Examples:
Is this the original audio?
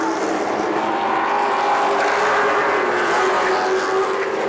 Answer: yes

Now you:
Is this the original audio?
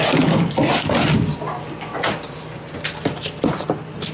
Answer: yes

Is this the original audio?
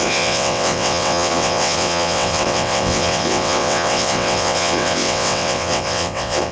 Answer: no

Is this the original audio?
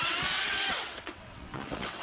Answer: no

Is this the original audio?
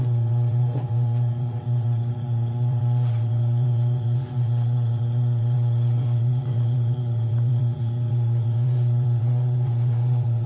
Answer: no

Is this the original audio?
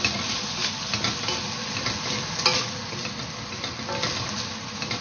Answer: yes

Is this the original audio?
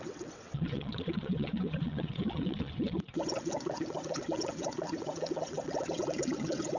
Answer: no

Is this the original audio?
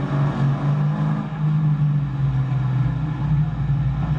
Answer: yes